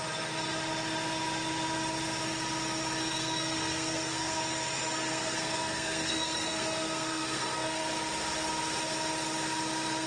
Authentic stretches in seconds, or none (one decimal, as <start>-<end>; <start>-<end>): 0.0-3.0; 4.4-5.1; 7.8-10.1